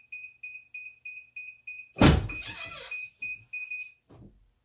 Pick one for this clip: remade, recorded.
recorded